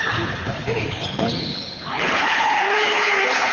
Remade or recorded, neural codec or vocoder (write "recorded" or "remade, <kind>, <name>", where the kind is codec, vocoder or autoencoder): remade, codec, HILCodec